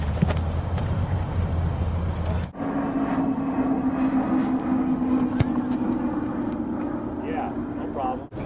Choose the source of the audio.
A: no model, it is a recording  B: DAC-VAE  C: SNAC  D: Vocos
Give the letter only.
A